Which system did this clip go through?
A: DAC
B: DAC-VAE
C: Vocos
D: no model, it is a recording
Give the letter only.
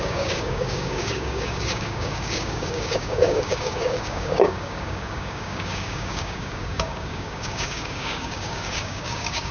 A